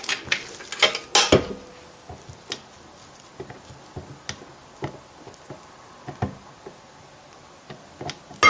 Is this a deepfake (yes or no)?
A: no